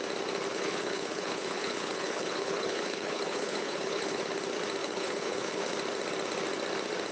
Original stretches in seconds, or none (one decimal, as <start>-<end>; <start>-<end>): 0.0-0.5; 4.2-4.8; 5.6-7.1